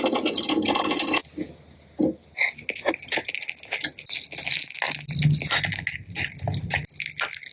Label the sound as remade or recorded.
recorded